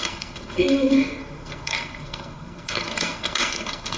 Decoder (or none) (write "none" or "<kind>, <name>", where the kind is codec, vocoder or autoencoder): codec, SNAC